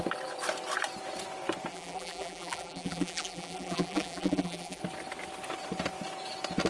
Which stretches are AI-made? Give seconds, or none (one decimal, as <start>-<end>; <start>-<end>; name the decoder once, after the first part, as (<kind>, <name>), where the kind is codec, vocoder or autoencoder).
1.7-4.8 (vocoder, BigVGAN v2)